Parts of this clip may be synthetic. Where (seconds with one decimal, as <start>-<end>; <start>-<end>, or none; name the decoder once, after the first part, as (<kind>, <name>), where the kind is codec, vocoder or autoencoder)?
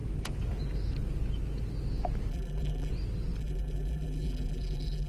2.3-2.9 (vocoder, BigVGAN v2); 3.4-5.1